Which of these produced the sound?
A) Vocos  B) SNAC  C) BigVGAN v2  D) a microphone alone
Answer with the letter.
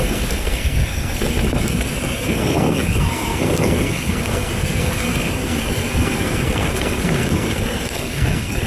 B